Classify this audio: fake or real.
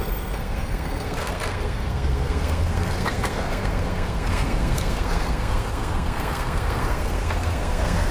fake